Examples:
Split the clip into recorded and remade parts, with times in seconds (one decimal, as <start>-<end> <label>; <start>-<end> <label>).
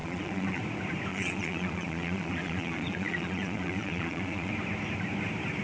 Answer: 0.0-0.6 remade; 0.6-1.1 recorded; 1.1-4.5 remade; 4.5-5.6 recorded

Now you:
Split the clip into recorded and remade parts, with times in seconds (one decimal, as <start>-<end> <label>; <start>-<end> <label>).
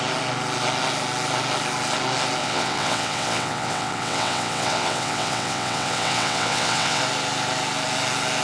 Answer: 0.0-2.4 recorded; 2.4-7.0 remade; 7.0-8.4 recorded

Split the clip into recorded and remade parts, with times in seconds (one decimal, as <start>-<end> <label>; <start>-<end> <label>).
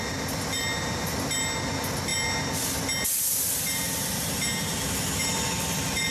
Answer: 0.0-6.1 recorded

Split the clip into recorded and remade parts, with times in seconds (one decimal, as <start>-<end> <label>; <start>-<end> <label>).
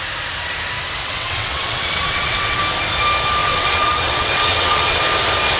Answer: 0.0-1.0 recorded; 1.0-2.6 remade; 2.6-3.4 recorded; 3.4-5.0 remade; 5.0-5.6 recorded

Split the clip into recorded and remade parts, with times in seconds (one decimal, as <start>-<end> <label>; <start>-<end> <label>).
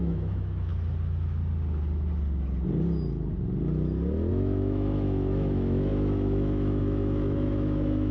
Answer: 0.0-0.7 remade; 0.7-4.3 recorded; 4.3-8.1 remade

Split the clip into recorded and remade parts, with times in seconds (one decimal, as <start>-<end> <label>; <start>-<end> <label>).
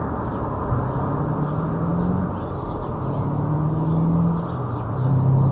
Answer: 0.0-5.5 recorded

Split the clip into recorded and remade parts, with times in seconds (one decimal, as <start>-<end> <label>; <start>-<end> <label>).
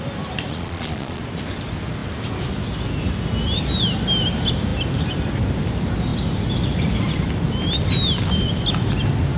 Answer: 0.0-0.5 recorded; 0.5-1.2 remade; 1.2-9.4 recorded